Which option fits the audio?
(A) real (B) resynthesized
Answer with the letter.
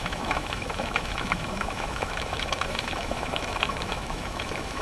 B